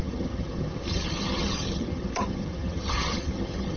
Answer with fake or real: fake